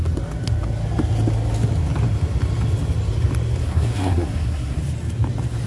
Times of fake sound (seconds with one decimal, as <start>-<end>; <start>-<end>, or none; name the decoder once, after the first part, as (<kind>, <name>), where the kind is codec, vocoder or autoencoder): 3.6-4.8 (codec, SNAC)

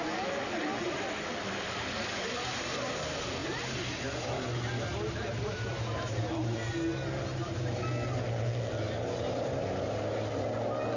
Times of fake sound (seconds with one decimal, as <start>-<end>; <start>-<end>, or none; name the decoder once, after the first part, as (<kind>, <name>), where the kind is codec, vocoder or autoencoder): none